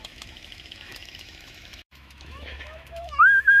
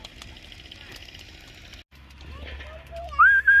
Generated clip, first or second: first